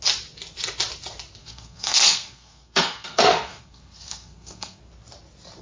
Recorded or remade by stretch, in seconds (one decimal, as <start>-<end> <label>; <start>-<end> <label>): 0.0-1.4 recorded; 1.4-4.8 remade; 4.8-5.6 recorded